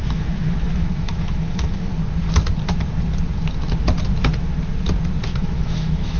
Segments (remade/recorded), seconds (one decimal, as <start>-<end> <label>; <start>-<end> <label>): 0.0-1.9 remade; 1.9-5.4 recorded; 5.4-6.2 remade